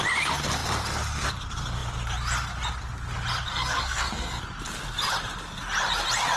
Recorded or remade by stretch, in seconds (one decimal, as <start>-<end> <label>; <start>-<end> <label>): 0.0-3.5 recorded; 3.5-4.4 remade; 4.4-6.4 recorded

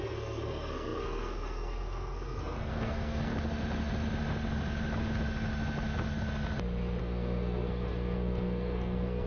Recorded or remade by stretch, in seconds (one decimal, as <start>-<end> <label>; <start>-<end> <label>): 0.0-3.3 remade; 3.3-7.0 recorded; 7.0-9.3 remade

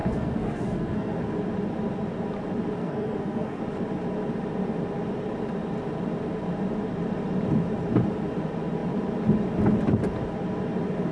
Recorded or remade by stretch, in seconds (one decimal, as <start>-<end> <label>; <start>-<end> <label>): 0.0-1.2 remade; 1.2-2.8 recorded; 2.8-3.6 remade; 3.6-11.1 recorded

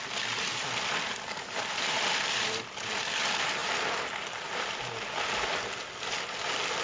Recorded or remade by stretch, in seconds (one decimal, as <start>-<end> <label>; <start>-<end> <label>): 0.0-6.8 recorded

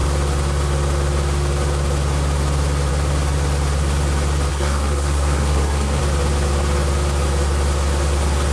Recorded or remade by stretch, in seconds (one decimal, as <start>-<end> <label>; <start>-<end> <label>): 0.0-4.5 recorded; 4.5-6.0 remade; 6.0-8.5 recorded

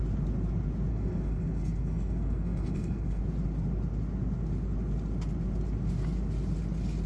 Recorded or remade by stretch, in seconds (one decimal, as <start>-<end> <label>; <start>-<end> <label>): 0.0-0.9 recorded; 0.9-3.2 remade; 3.2-7.1 recorded

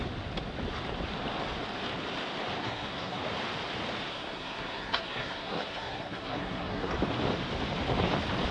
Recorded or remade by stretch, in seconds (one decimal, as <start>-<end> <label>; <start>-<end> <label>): 0.0-2.6 recorded; 2.6-3.2 remade; 3.2-4.1 recorded; 4.1-6.9 remade; 6.9-8.5 recorded

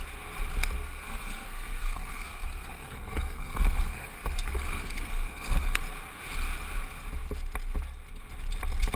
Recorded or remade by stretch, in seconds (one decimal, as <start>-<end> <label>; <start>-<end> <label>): 0.0-0.8 recorded; 0.8-5.8 remade; 5.8-9.0 recorded